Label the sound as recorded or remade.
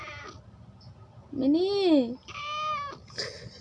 recorded